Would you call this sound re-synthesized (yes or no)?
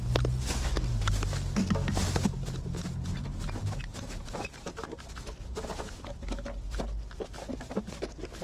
no